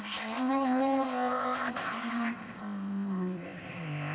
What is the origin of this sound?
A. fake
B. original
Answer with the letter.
A